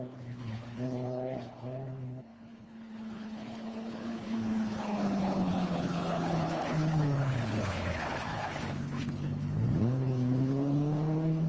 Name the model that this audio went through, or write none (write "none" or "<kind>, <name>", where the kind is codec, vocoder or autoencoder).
codec, HILCodec